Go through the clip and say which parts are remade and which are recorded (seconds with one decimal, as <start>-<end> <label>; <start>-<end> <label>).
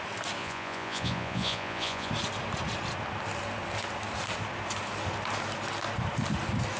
0.0-0.4 recorded; 0.4-2.1 remade; 2.1-6.8 recorded